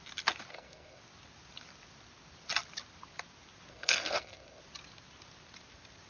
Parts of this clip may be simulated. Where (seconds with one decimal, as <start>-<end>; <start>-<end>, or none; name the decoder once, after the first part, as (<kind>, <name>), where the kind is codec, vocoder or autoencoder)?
0.5-1.0 (codec, SNAC); 3.7-4.6